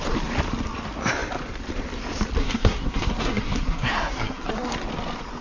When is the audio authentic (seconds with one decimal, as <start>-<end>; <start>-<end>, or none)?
0.0-2.4; 4.5-5.4